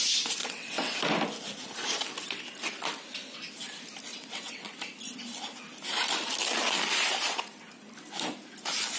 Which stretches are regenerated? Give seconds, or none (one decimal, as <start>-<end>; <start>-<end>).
0.4-1.0; 4.1-4.7